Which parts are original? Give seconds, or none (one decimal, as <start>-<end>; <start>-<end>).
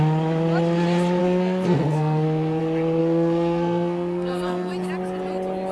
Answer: 0.0-1.2; 2.6-3.0; 4.7-5.7